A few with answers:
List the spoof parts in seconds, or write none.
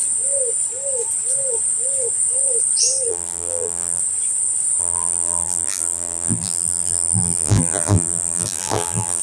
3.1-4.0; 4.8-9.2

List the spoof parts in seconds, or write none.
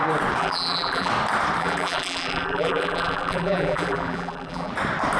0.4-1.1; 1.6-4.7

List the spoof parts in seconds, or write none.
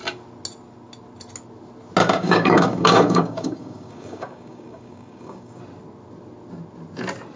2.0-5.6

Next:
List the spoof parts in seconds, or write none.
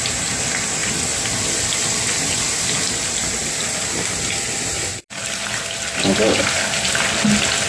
none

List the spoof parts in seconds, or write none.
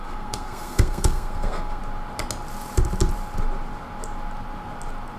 0.0-1.8